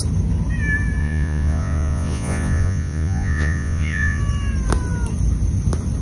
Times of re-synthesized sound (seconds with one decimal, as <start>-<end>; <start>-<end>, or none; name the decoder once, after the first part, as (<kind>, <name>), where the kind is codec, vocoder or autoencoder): 1.0-4.2 (vocoder, Vocos)